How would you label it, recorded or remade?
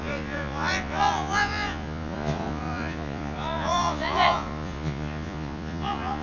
remade